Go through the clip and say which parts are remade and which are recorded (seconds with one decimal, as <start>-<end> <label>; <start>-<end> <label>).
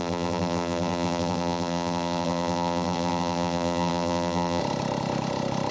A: 0.0-4.6 remade; 4.6-5.7 recorded